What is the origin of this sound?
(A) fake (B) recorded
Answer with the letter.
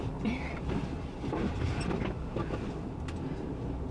A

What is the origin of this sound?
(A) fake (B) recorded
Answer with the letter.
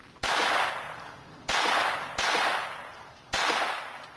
B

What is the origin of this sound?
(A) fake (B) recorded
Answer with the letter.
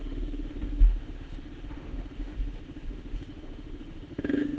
A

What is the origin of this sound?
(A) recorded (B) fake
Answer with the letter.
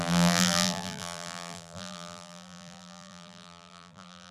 B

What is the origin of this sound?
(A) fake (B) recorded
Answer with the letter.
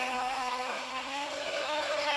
A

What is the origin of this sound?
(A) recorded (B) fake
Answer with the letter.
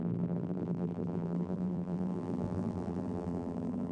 B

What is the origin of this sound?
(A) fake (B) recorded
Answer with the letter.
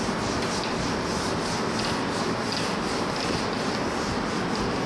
B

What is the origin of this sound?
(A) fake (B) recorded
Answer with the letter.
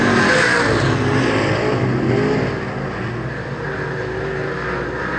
B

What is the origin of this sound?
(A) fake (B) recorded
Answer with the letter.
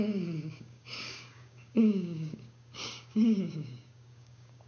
A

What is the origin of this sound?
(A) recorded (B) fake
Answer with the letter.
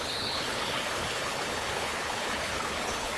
B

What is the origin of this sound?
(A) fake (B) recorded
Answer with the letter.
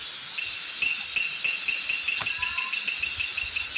B